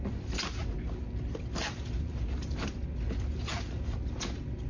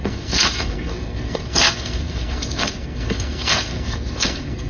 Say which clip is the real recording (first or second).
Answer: first